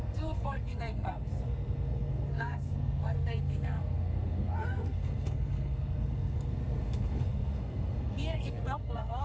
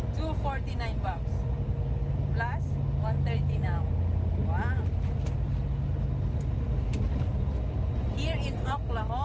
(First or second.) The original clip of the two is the second